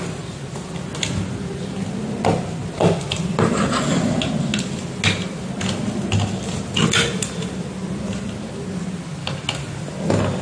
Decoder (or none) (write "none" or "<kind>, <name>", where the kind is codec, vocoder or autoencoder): none